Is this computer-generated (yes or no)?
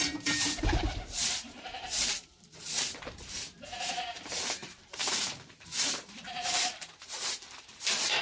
yes